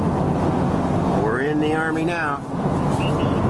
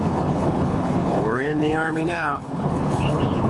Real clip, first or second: first